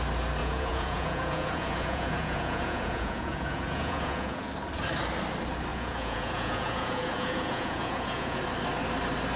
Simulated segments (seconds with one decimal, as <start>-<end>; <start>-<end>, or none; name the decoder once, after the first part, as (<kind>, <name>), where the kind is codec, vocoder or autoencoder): 0.4-4.5 (vocoder, Vocos); 5.7-8.4